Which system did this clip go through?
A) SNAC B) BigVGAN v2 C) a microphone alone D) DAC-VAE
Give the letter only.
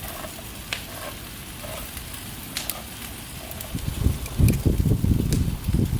C